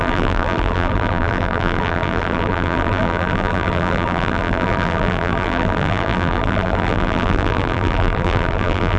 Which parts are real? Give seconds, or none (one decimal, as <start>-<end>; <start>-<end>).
none